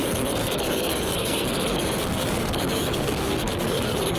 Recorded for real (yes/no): no